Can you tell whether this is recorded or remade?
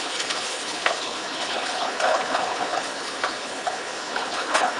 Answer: remade